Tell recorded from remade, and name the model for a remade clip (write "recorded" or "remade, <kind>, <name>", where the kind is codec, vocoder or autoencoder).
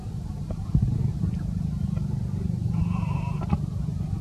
remade, vocoder, BigVGAN v2